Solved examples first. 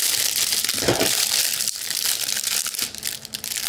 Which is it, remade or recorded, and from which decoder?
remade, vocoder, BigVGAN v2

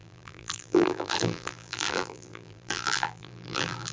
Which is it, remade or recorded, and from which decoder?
remade, vocoder, BigVGAN v2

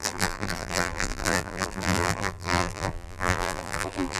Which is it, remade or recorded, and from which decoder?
remade, vocoder, BigVGAN v2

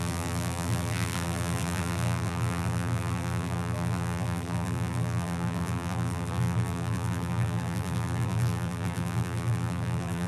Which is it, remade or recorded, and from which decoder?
remade, vocoder, BigVGAN v2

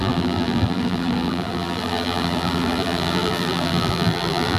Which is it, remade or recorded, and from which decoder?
remade, vocoder, BigVGAN v2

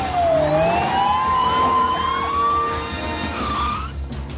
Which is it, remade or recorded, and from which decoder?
recorded